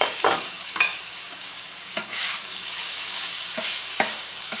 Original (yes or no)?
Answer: no